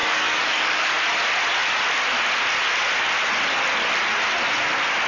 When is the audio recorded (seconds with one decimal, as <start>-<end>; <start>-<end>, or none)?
0.9-5.1

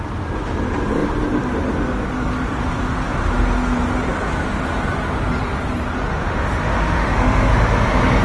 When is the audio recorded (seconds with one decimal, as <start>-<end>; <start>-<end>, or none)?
0.0-6.1; 7.5-8.2

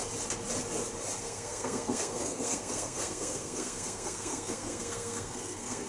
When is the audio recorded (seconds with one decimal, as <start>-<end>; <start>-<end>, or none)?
0.0-1.2

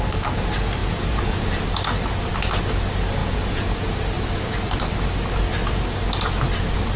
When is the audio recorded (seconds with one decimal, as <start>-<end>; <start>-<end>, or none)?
0.0-0.8; 1.5-3.2; 4.0-7.0

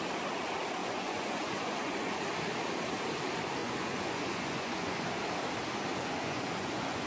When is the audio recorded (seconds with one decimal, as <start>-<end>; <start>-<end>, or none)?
0.0-0.8; 2.2-3.6; 5.1-5.9

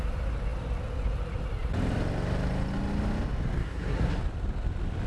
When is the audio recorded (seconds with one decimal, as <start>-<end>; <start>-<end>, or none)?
0.0-3.6; 4.2-5.1

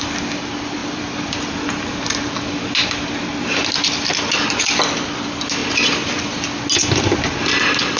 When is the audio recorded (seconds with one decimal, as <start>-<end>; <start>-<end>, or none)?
0.0-0.8; 2.3-5.6; 6.2-8.0